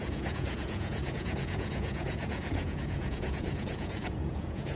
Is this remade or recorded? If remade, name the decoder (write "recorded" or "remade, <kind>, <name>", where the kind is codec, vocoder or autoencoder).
remade, vocoder, Vocos